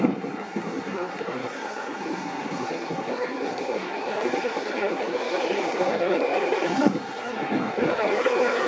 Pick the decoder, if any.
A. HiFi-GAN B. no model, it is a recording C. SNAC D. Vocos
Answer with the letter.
C